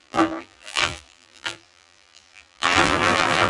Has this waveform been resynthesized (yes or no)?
yes